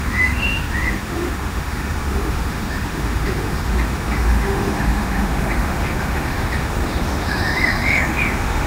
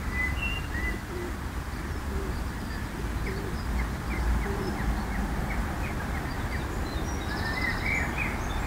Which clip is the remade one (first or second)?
first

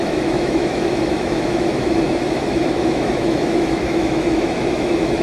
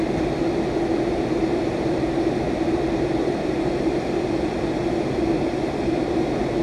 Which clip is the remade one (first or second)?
first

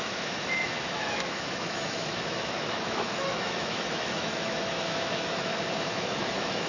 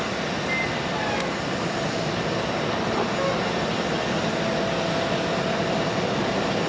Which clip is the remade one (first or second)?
first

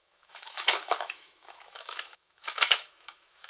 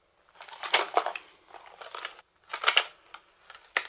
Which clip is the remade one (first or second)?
first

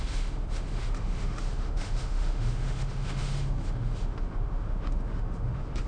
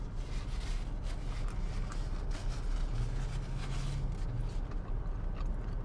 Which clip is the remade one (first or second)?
first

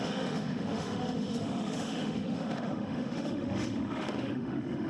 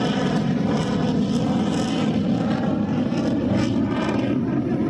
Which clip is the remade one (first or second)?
first